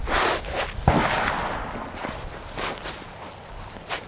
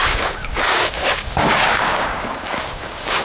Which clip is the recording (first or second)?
first